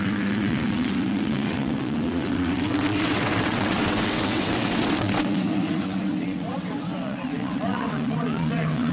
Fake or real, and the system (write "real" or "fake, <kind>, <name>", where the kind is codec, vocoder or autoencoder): fake, vocoder, WaveNeXt